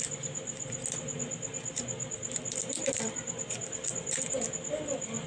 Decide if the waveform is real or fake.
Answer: real